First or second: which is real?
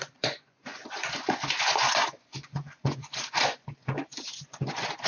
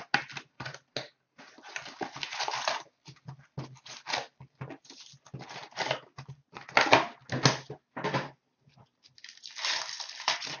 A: second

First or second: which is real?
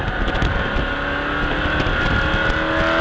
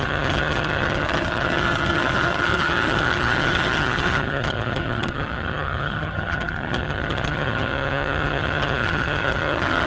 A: first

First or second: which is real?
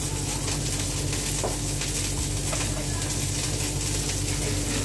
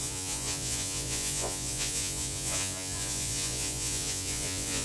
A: first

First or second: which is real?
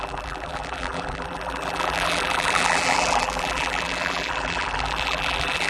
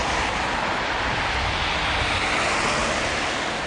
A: second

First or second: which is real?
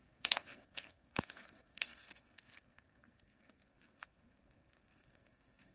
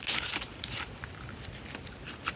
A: second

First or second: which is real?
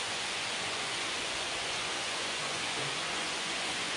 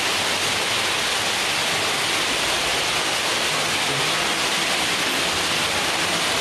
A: second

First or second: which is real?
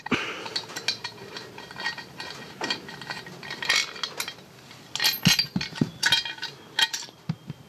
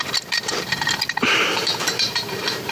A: first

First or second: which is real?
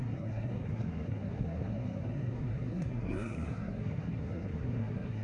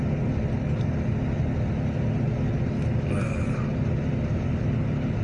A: second